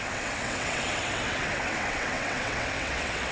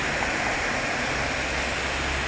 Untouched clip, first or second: second